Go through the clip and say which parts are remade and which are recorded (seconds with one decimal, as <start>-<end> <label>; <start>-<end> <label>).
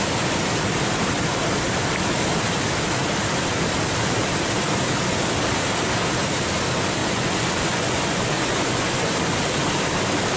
0.0-7.0 recorded; 7.0-9.1 remade; 9.1-10.4 recorded